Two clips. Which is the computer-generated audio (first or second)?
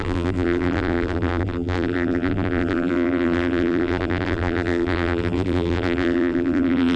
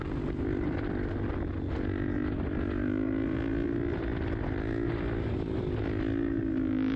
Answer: first